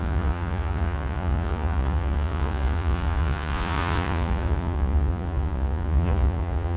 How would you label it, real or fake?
fake